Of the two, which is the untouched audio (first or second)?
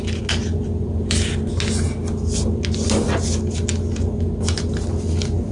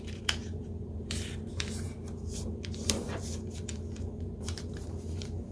first